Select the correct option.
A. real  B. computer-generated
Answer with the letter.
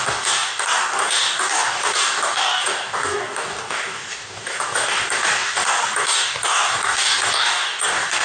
B